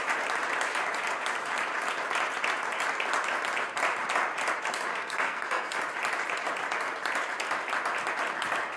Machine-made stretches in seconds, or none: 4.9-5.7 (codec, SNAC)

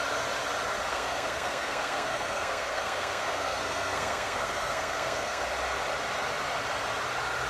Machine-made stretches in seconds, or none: 0.9-5.4 (codec, SNAC)

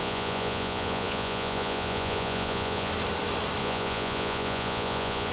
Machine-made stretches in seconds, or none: 0.0-2.9 (vocoder, Vocos); 3.6-5.3